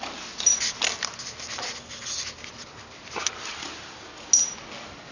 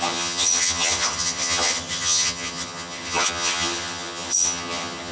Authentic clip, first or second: first